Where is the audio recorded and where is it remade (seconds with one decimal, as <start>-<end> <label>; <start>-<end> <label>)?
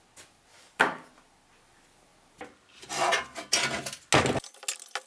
0.0-0.5 recorded; 0.5-1.1 remade; 1.1-5.1 recorded